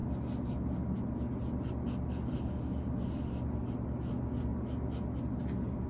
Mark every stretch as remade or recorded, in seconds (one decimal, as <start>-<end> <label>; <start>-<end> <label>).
0.0-5.9 recorded